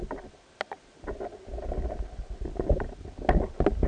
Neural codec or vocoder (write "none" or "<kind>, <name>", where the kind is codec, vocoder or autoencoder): none